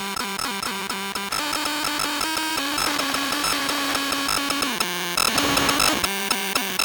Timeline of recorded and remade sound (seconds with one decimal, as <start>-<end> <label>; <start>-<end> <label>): 0.0-0.8 remade; 0.8-2.5 recorded; 2.5-3.6 remade; 3.6-6.2 recorded; 6.2-6.8 remade